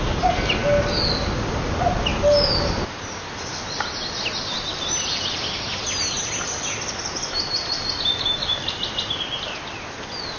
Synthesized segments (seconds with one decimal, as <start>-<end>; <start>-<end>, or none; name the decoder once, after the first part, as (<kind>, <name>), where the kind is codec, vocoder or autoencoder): 2.1-3.3 (vocoder, BigVGAN v2); 8.4-9.2